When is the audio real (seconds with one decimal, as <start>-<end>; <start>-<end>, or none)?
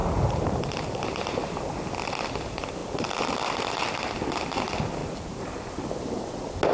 1.3-5.0; 5.7-6.7